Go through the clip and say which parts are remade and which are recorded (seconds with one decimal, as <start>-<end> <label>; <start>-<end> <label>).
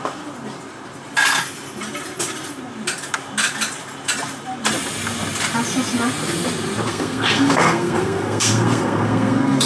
0.0-6.9 recorded; 6.9-9.7 remade